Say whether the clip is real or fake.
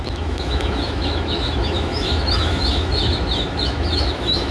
fake